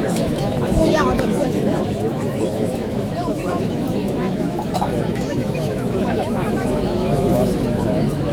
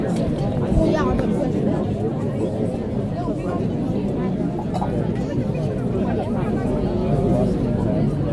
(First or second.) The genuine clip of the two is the second